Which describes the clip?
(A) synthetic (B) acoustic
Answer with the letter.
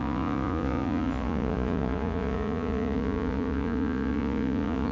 A